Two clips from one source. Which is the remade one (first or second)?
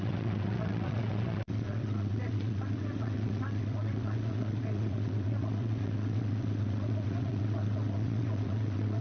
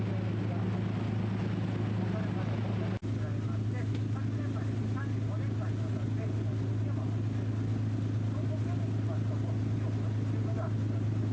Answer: first